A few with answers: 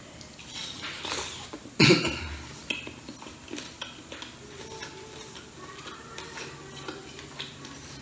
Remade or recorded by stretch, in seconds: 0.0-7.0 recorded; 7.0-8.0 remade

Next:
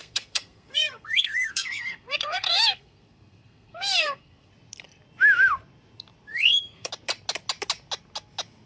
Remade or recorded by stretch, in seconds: 0.0-4.5 remade; 4.5-6.3 recorded; 6.3-6.9 remade; 6.9-8.7 recorded

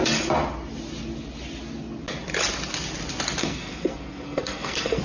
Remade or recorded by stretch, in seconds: 0.0-3.4 recorded; 3.4-5.0 remade